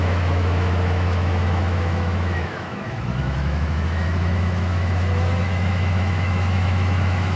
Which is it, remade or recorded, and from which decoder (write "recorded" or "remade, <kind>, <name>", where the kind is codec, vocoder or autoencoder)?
remade, autoencoder, DAC-VAE